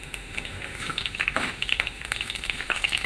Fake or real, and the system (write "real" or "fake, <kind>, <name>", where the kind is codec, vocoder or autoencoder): fake, autoencoder, DAC-VAE